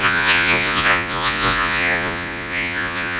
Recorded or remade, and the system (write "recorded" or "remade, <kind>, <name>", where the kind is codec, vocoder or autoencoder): remade, vocoder, Vocos